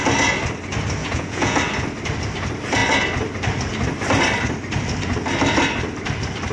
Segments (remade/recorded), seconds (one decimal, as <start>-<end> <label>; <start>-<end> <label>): 0.0-1.0 recorded; 1.0-1.6 remade; 1.6-6.5 recorded